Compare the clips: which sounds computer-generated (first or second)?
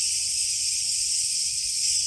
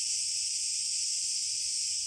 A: first